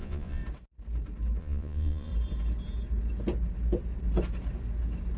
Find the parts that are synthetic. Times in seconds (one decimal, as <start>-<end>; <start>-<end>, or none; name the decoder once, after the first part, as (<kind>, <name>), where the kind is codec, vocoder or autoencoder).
0.0-0.4 (vocoder, Vocos); 1.4-2.1